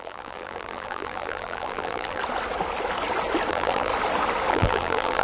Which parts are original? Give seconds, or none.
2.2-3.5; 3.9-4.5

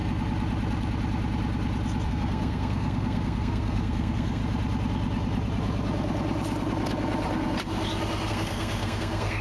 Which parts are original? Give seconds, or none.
0.0-2.1; 4.4-8.3

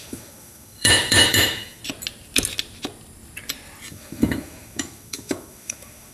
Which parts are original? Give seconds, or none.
1.8-3.9

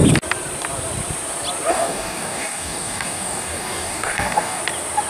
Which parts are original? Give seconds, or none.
0.0-1.7; 4.6-5.1